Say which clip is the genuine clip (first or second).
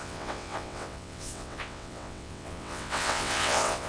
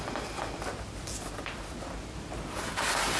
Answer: second